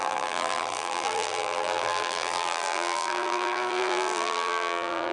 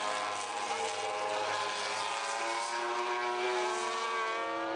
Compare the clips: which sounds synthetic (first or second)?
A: first